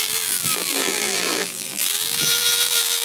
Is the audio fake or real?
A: fake